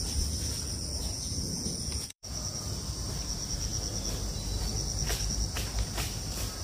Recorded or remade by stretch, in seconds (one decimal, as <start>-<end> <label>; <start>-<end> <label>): 0.0-1.0 recorded; 1.0-2.6 remade; 2.6-6.6 recorded